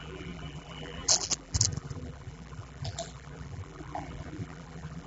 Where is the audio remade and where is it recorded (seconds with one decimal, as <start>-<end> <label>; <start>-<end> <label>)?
0.0-5.1 remade